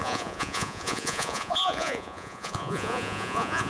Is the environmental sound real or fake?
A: fake